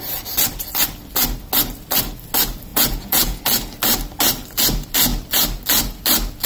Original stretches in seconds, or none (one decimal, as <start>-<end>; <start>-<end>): 0.0-2.7; 3.4-6.5